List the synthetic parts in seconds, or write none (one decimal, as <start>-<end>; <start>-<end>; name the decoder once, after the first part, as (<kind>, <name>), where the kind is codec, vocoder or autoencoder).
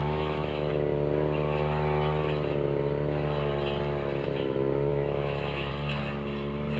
0.0-0.7 (autoencoder, DAC-VAE); 4.9-5.7